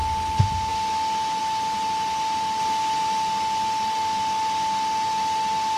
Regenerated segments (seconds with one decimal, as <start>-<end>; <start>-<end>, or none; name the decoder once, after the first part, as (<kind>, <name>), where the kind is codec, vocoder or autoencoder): none